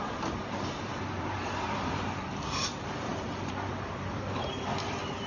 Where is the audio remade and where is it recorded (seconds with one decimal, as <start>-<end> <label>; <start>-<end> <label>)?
0.0-5.3 remade